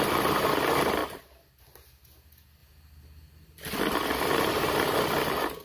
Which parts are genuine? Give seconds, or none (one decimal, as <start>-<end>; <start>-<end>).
0.0-5.6